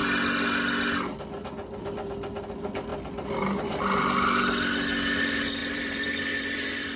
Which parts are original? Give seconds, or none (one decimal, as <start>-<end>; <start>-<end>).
0.0-2.9; 3.8-5.6